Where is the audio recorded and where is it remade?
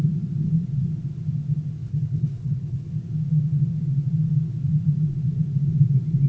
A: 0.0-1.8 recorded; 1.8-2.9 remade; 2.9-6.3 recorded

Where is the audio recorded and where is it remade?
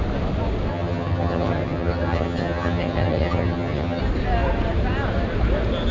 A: 0.0-0.7 recorded; 0.7-4.0 remade; 4.0-5.9 recorded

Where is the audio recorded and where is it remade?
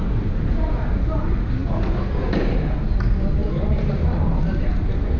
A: 0.0-5.2 remade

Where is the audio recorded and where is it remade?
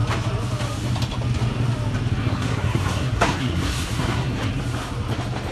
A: 0.0-2.2 recorded; 2.2-4.5 remade; 4.5-5.5 recorded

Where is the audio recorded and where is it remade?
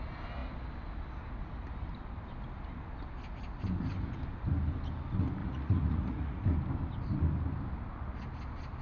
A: 0.0-5.4 recorded; 5.4-6.4 remade; 6.4-8.8 recorded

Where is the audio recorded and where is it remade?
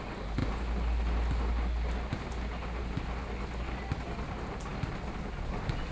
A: 0.0-5.9 recorded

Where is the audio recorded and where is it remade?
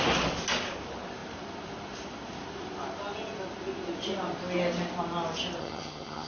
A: 0.0-5.6 recorded; 5.6-6.3 remade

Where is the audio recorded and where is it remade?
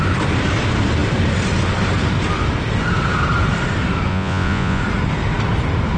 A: 0.0-4.1 recorded; 4.1-4.8 remade; 4.8-6.0 recorded